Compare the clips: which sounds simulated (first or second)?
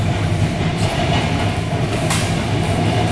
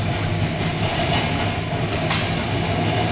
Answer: first